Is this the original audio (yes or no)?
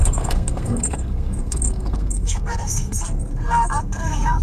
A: no